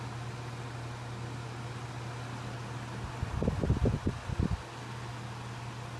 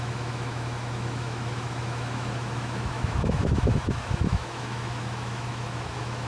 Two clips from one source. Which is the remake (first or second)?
second